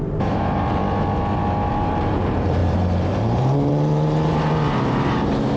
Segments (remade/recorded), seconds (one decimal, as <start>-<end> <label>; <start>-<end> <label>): 0.0-0.8 remade; 0.8-1.7 recorded; 1.7-5.6 remade